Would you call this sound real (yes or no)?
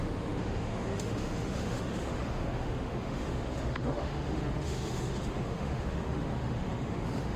no